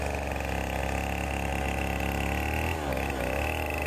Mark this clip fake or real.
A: real